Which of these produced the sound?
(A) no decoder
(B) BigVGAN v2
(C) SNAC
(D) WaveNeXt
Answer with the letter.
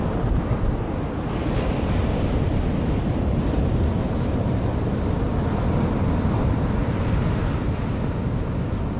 A